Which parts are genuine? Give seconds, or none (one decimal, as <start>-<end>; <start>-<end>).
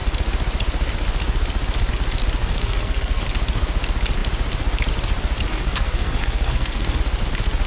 0.0-2.4; 3.2-5.5; 7.0-7.7